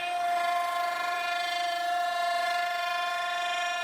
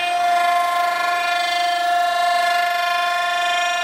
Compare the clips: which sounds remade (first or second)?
first